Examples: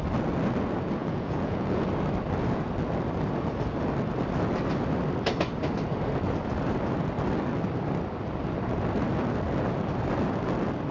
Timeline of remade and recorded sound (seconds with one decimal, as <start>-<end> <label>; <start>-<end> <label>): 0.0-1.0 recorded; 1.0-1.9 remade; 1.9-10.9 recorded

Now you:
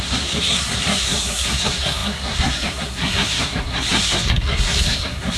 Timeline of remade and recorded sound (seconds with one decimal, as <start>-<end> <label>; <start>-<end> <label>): 0.0-5.4 remade

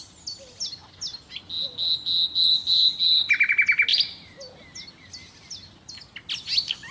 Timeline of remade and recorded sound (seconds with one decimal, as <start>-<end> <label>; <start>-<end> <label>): 0.0-6.9 recorded

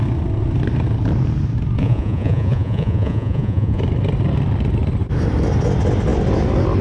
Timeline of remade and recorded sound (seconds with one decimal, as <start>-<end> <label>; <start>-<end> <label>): 0.0-1.8 recorded; 1.8-3.8 remade; 3.8-6.8 recorded

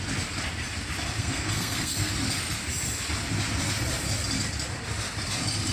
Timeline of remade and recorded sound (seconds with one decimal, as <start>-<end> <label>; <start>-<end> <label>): 0.0-1.2 recorded; 1.2-2.1 remade; 2.1-5.7 recorded